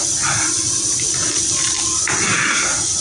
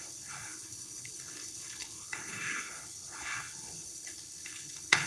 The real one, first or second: first